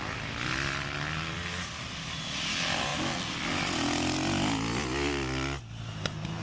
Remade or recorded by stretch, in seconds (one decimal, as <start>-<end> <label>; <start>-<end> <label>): 0.0-6.4 recorded